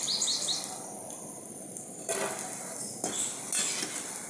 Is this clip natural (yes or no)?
yes